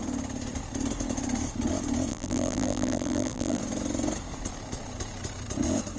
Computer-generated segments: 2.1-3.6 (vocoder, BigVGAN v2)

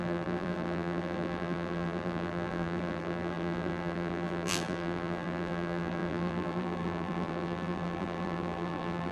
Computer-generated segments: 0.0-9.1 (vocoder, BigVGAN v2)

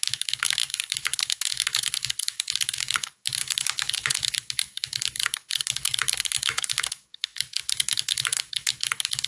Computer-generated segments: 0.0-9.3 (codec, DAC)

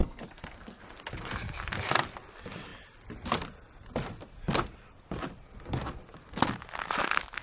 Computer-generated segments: 0.0-0.8 (codec, SNAC)

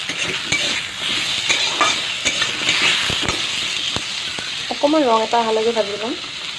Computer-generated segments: none

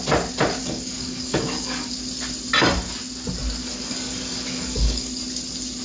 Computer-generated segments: 0.6-1.9 (codec, DAC); 3.6-5.1

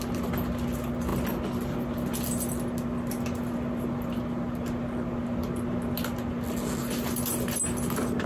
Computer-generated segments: none

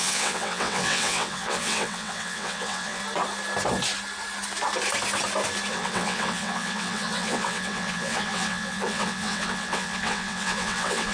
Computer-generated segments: 0.0-3.0 (vocoder, WaveNeXt); 5.7-11.1